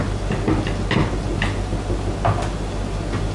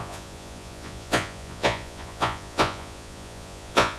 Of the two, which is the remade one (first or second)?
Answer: second